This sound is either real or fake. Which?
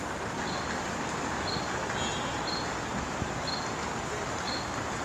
real